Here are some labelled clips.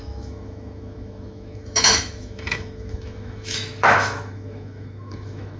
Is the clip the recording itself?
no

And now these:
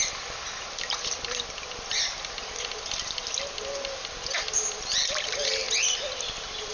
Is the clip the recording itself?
yes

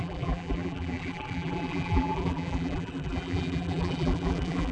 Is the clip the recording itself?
no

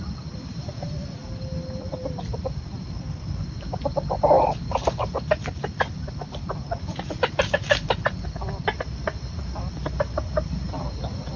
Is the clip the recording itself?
yes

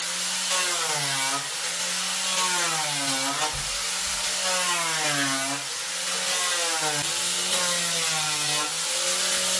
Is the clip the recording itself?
yes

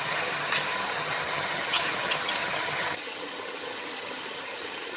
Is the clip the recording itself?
no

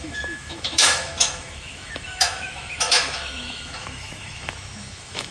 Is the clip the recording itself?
no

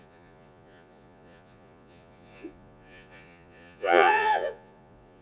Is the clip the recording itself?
no